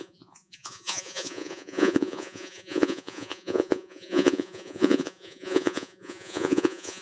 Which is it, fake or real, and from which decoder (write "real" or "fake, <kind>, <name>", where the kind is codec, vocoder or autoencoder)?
fake, vocoder, Vocos